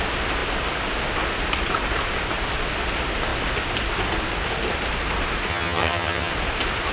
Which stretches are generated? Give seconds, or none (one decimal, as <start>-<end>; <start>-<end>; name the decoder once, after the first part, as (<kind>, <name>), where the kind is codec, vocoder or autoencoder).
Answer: 5.5-6.3 (vocoder, HiFi-GAN)